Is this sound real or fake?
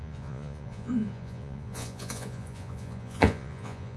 fake